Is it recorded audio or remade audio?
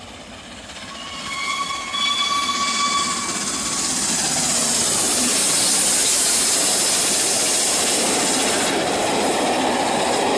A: recorded